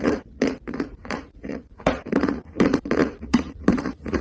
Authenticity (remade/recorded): remade